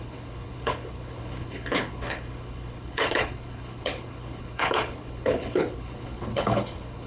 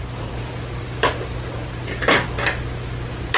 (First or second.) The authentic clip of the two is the second